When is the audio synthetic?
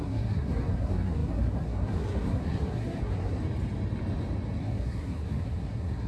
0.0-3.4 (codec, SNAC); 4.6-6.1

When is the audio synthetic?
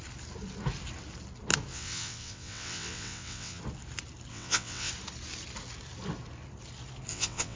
1.7-3.6 (vocoder, WaveNeXt); 4.3-4.9; 7.1-7.6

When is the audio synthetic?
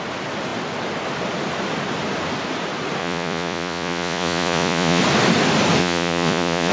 3.0-5.0 (vocoder, Vocos); 5.8-6.7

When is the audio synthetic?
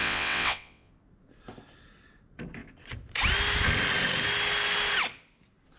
0.0-0.9 (vocoder, WaveNeXt)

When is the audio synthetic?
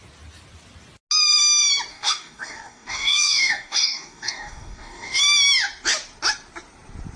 1.9-5.2 (codec, DAC)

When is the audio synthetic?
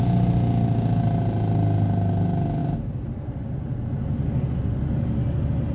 none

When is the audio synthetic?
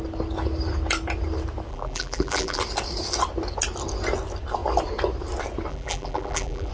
1.7-2.6 (vocoder, BigVGAN v2); 5.7-6.7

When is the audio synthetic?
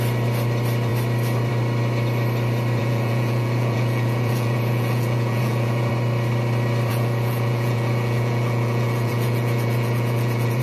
2.8-5.9 (vocoder, Vocos); 6.9-10.6